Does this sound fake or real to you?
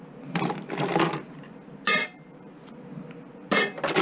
real